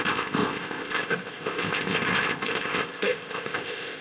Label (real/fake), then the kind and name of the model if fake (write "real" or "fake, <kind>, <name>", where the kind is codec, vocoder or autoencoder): fake, codec, ZipCodec